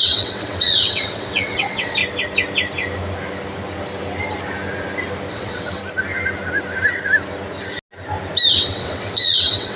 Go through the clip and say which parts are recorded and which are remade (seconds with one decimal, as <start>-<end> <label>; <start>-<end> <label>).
0.0-2.0 remade; 2.0-5.3 recorded; 5.3-5.8 remade; 5.8-8.5 recorded; 8.5-9.8 remade